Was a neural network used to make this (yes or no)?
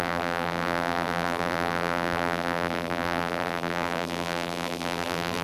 yes